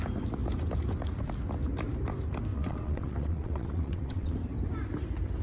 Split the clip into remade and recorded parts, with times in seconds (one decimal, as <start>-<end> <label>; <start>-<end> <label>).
0.0-2.5 recorded; 2.5-4.3 remade; 4.3-5.4 recorded